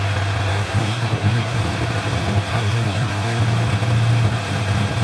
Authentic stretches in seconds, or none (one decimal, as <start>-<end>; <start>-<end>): 0.0-0.5; 1.6-2.5; 3.4-5.0